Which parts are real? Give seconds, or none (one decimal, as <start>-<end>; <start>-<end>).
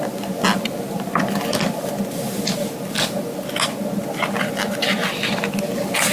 0.0-6.1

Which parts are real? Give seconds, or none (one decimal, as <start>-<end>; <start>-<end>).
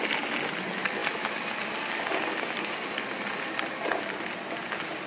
0.0-5.1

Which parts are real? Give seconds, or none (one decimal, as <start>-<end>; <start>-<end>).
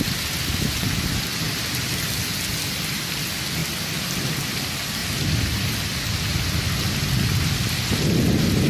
0.0-8.7